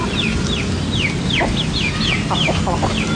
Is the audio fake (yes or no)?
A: no